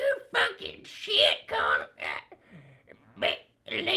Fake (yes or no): no